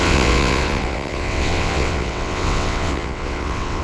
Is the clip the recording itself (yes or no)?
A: no